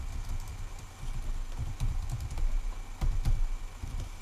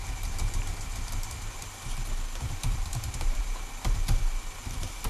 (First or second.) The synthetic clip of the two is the second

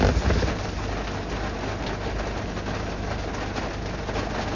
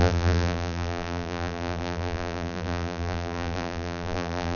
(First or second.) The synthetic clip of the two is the second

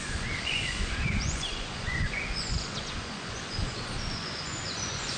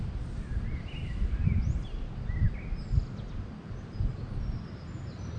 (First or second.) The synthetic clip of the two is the first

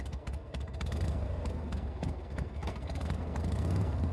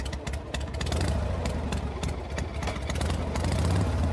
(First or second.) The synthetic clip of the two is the first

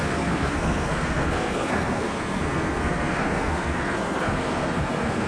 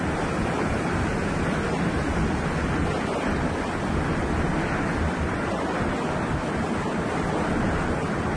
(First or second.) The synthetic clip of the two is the first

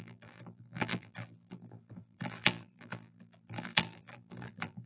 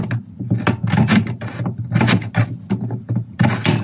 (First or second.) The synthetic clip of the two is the first